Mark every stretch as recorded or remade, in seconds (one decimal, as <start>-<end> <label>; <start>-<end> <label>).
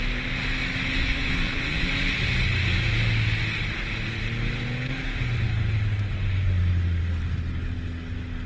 0.0-1.0 recorded; 1.0-1.9 remade; 1.9-8.5 recorded